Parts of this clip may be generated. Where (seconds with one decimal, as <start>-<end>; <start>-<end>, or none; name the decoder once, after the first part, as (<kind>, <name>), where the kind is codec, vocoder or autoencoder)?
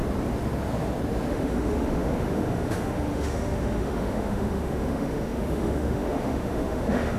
1.3-7.2 (autoencoder, DAC-VAE)